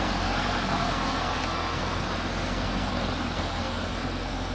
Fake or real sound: fake